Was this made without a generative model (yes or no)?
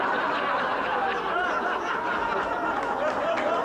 yes